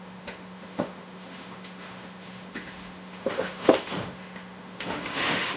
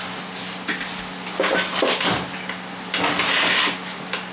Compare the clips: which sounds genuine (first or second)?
second